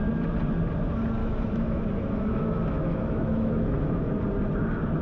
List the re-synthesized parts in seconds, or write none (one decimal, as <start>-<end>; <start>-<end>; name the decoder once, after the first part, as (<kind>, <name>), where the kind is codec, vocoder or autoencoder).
1.2-4.2 (autoencoder, DAC-VAE)